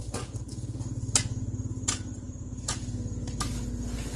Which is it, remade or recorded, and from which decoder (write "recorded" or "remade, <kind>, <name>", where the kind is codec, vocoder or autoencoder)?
recorded